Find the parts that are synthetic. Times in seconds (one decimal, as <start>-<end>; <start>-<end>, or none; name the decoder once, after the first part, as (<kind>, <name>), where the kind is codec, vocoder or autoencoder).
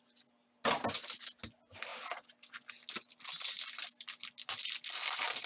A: none